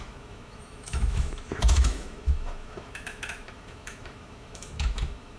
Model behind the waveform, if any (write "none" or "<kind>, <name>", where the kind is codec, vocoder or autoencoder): autoencoder, DAC-VAE